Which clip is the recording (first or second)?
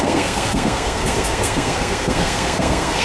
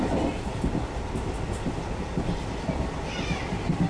second